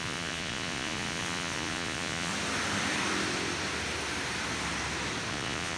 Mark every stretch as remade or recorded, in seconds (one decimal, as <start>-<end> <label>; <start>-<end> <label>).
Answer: 0.0-2.3 remade; 2.3-5.3 recorded; 5.3-5.8 remade